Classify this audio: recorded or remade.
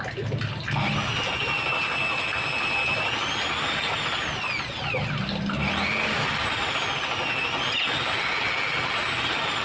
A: recorded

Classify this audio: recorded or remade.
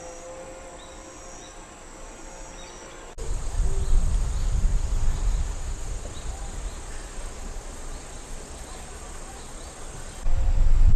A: recorded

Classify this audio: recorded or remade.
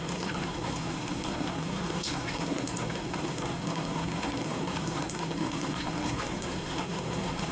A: remade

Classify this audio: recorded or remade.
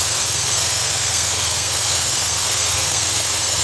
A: remade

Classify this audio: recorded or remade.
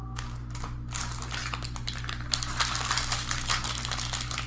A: recorded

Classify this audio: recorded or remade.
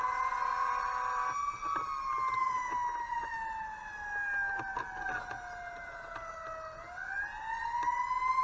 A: recorded